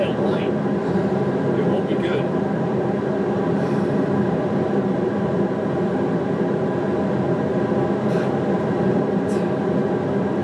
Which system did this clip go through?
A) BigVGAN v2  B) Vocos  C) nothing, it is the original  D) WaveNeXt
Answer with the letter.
A